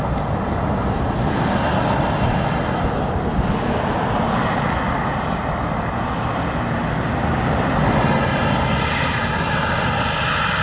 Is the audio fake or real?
real